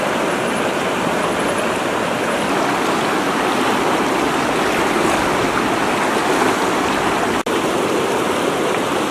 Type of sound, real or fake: real